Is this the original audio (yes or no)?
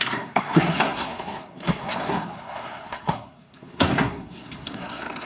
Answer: no